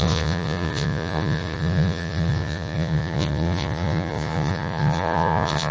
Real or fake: fake